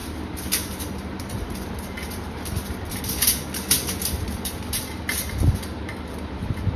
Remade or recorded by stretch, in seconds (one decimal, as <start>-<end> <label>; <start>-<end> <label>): 0.0-3.0 remade; 3.0-4.0 recorded; 4.0-6.8 remade